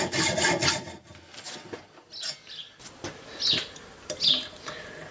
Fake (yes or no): no